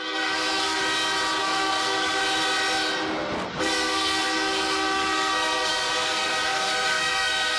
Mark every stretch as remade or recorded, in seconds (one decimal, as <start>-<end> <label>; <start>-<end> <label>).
0.0-0.8 remade; 0.8-1.4 recorded; 1.4-2.2 remade; 2.2-3.6 recorded; 3.6-7.6 remade